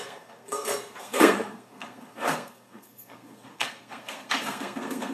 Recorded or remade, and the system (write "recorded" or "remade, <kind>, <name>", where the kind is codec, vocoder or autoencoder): remade, codec, SNAC